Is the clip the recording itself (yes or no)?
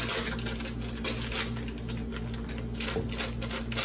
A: yes